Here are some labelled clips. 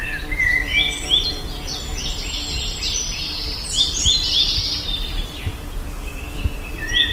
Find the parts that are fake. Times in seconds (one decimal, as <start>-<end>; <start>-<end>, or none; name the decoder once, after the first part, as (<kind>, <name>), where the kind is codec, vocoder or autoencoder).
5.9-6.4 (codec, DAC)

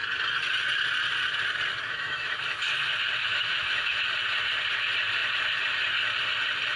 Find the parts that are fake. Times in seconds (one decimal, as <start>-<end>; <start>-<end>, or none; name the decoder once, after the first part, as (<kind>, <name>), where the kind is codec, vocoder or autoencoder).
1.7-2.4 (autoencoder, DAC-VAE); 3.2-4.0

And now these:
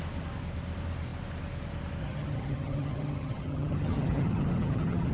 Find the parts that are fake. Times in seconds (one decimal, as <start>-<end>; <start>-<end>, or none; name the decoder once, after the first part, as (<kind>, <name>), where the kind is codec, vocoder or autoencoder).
2.0-5.1 (vocoder, HiFi-GAN)